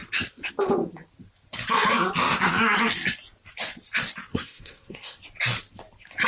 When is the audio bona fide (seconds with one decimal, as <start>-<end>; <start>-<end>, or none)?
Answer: 0.0-4.3; 5.2-6.3